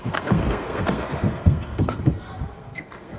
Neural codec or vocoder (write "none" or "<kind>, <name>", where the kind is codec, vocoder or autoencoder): codec, SNAC